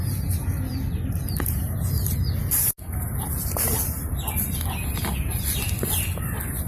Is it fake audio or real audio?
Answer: real